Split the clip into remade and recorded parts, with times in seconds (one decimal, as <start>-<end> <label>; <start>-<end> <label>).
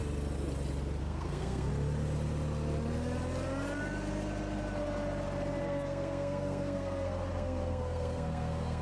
0.0-1.0 recorded; 1.0-1.7 remade; 1.7-5.6 recorded; 5.6-8.8 remade